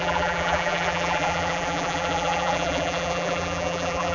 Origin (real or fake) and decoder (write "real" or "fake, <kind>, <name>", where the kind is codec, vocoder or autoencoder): fake, vocoder, BigVGAN v2